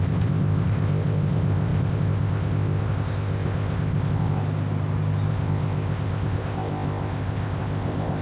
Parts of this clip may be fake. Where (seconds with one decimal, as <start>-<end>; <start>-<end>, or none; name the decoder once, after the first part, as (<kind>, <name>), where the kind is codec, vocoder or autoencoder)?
0.0-4.4 (codec, ZipCodec); 5.3-8.2